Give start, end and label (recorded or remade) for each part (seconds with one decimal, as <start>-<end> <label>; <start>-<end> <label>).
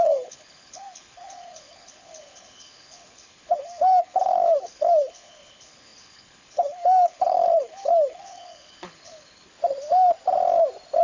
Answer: 0.0-9.5 remade; 9.5-11.0 recorded